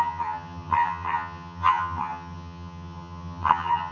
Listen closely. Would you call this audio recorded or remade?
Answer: remade